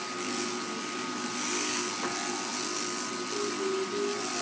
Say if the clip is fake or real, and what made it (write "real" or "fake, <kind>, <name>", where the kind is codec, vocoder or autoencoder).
real